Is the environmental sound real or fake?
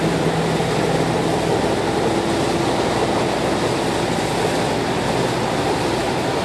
real